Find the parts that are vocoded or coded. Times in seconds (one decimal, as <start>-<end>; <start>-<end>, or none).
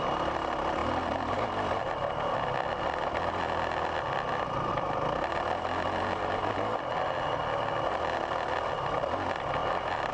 none